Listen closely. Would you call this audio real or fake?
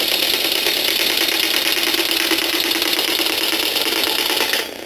real